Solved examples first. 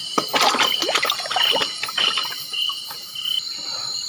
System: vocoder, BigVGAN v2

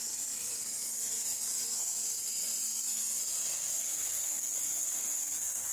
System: codec, SNAC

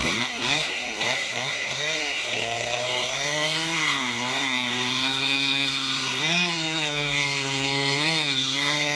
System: codec, SNAC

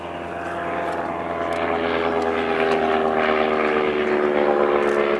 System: none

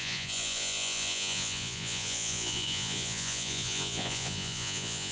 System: vocoder, Vocos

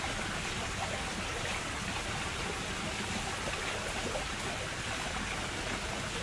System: none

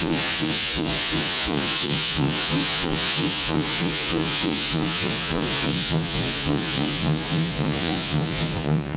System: vocoder, Vocos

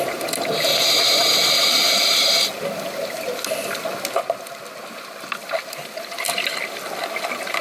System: none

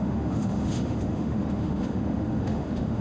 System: autoencoder, DAC-VAE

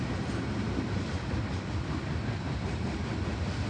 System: none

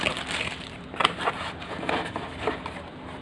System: none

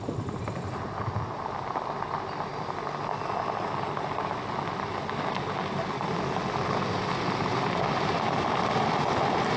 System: none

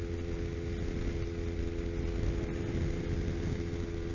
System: none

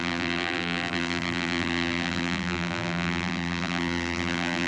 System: vocoder, BigVGAN v2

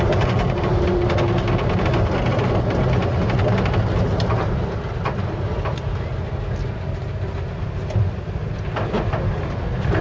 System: none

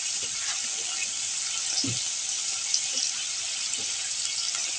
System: none